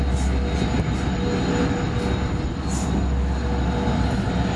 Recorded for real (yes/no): yes